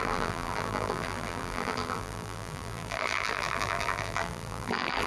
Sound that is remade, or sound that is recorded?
remade